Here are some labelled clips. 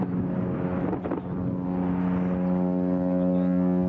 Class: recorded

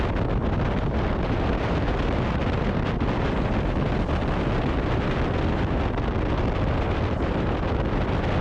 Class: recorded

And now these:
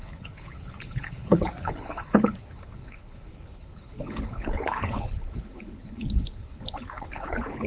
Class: remade